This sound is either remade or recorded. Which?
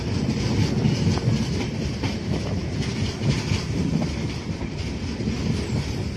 recorded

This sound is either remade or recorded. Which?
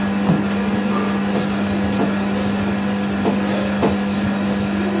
recorded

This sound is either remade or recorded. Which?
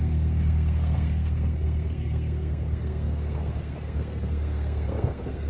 remade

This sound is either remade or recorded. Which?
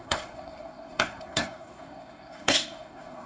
remade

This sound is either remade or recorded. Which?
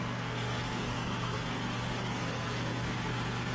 remade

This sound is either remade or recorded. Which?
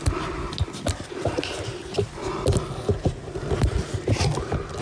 recorded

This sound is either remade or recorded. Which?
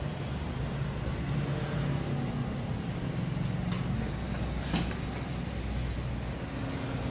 recorded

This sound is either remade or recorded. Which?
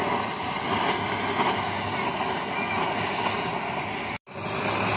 recorded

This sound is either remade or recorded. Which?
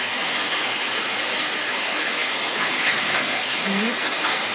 remade